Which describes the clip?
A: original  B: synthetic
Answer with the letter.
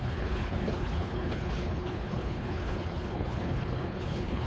B